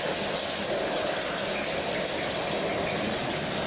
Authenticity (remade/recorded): recorded